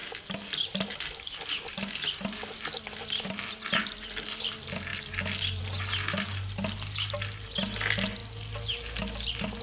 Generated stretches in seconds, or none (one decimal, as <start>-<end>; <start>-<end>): none